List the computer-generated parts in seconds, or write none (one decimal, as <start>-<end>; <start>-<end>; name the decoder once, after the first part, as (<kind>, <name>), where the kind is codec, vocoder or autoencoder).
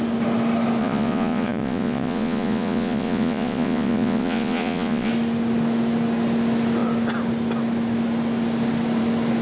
0.8-5.1 (vocoder, Vocos)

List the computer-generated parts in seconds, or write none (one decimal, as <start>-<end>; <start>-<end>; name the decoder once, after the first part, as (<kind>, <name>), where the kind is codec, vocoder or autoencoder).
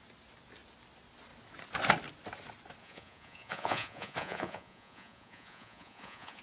2.8-6.4 (vocoder, Vocos)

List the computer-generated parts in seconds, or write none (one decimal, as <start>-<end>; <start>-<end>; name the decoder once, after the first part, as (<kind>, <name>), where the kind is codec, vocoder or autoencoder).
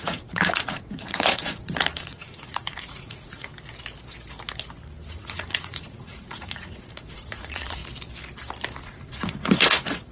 0.0-3.5 (vocoder, Vocos); 5.1-7.8; 8.8-10.1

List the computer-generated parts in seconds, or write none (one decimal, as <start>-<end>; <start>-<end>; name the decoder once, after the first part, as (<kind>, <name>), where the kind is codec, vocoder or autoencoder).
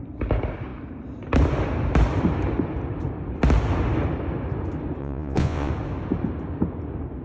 5.0-5.7 (vocoder, Vocos)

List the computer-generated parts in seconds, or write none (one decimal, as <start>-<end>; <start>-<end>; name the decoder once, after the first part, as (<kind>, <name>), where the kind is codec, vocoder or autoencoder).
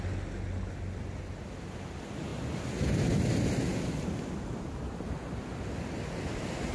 none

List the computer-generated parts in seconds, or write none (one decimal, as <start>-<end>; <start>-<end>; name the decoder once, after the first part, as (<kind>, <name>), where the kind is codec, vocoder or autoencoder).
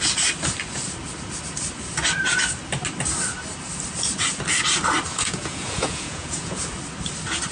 5.1-6.6 (vocoder, Vocos)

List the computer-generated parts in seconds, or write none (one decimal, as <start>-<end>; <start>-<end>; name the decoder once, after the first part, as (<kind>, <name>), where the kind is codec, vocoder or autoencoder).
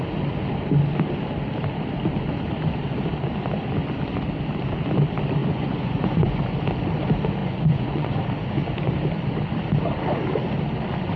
5.4-6.4 (vocoder, Vocos); 7.4-8.2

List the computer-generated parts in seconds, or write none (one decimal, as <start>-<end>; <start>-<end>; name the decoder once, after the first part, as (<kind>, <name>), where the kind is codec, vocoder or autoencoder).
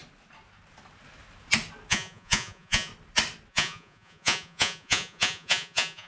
1.9-2.9 (vocoder, Vocos); 3.5-6.1